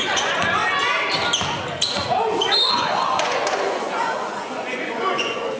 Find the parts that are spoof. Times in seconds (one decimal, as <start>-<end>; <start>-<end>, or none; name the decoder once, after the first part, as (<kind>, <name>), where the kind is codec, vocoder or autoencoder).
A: 0.0-0.6 (vocoder, Vocos); 2.6-5.6